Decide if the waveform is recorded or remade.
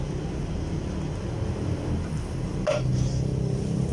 recorded